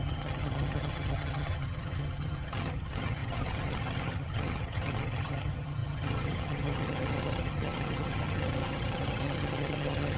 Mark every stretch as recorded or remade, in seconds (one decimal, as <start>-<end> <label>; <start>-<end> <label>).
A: 0.0-10.2 remade